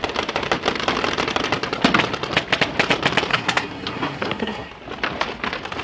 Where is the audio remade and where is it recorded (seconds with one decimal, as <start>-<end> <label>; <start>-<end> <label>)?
0.0-3.3 recorded; 3.3-4.7 remade; 4.7-5.8 recorded